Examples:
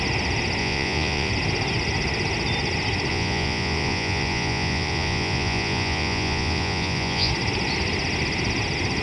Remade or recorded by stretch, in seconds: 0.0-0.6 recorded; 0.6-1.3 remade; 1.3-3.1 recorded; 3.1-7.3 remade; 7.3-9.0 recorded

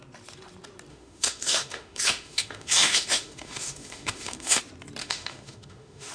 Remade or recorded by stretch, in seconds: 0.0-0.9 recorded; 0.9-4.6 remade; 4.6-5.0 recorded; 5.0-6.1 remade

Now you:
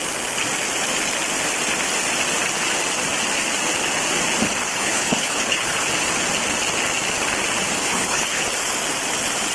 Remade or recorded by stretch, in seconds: 0.0-4.6 recorded; 4.6-5.9 remade; 5.9-7.8 recorded; 7.8-8.4 remade; 8.4-9.5 recorded

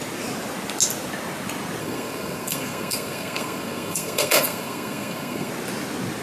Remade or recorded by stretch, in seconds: 0.0-1.8 recorded; 1.8-5.5 remade; 5.5-6.2 recorded

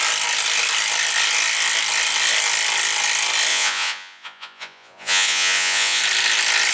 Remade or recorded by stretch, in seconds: 0.0-3.5 recorded; 3.5-6.0 remade; 6.0-6.7 recorded

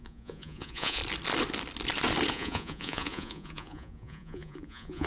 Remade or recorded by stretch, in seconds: 0.0-1.0 remade; 1.0-2.3 recorded; 2.3-5.1 remade